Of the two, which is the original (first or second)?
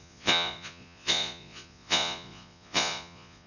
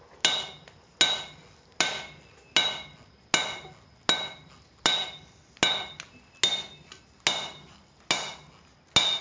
second